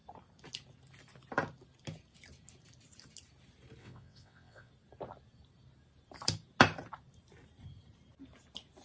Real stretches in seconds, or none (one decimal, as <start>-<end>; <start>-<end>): 0.0-3.8; 4.7-8.8